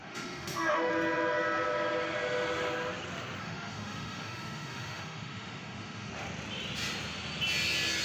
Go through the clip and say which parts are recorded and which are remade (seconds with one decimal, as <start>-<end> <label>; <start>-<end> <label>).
0.0-0.9 remade; 0.9-3.4 recorded; 3.4-6.1 remade; 6.1-8.0 recorded